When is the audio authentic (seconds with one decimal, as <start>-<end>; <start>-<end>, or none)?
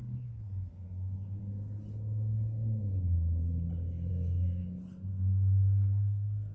1.4-4.1; 4.6-5.1